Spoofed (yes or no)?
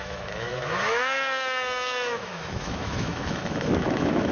yes